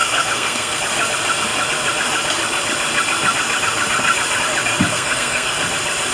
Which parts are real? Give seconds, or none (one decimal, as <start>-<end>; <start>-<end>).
0.8-4.9; 5.6-6.1